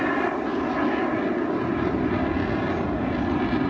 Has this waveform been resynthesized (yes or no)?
no